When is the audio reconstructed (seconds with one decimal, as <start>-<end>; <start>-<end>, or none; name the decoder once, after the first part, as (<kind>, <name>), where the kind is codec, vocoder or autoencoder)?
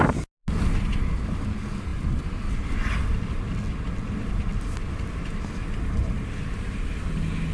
6.0-7.0 (vocoder, BigVGAN v2)